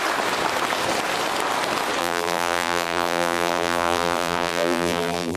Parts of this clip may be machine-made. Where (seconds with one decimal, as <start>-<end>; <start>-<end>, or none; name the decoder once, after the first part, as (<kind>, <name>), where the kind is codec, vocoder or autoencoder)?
2.0-5.4 (vocoder, BigVGAN v2)